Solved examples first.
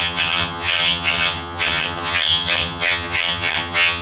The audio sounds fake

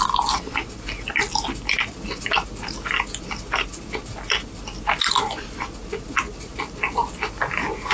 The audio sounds real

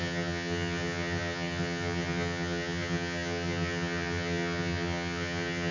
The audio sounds fake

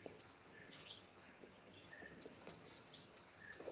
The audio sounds fake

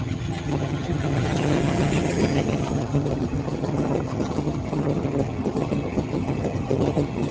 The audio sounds fake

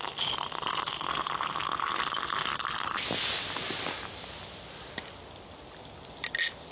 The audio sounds real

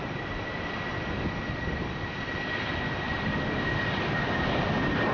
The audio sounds real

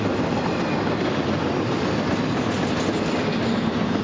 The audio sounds real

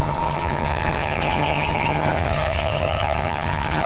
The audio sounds fake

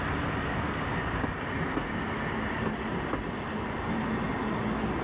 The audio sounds real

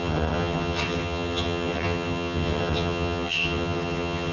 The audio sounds fake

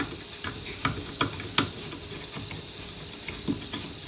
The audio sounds real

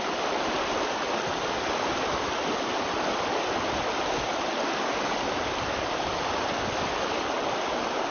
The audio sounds real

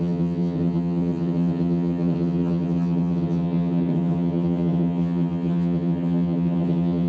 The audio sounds fake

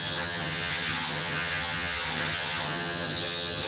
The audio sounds fake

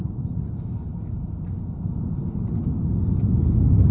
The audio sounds real